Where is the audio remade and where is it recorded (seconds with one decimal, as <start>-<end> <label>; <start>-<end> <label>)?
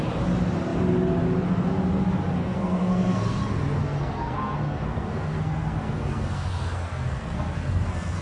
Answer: 0.0-2.4 recorded; 2.4-3.4 remade; 3.4-3.8 recorded; 3.8-8.2 remade